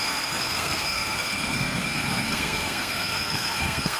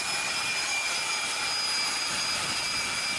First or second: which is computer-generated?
first